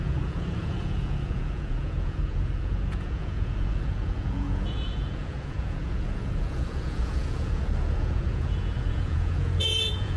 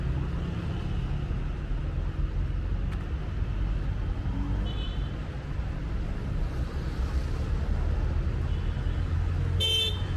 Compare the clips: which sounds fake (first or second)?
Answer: first